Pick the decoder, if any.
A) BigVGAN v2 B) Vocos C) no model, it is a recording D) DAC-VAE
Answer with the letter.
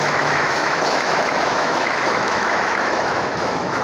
D